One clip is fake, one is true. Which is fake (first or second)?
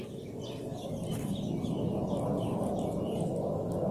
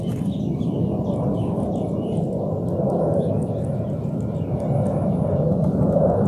second